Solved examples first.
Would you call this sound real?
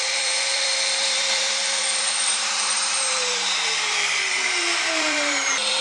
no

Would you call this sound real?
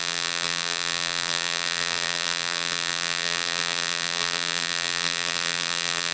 no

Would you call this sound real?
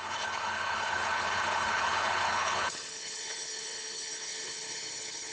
no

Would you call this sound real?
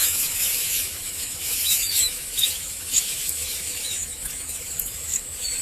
no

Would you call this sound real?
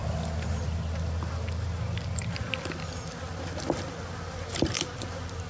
yes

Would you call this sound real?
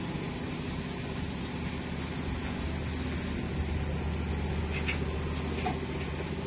yes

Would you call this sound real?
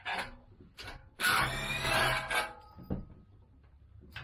yes